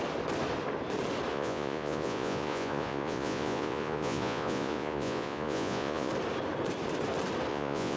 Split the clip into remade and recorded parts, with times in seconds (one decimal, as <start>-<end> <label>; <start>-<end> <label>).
0.0-1.3 recorded; 1.3-6.1 remade; 6.1-7.5 recorded; 7.5-8.0 remade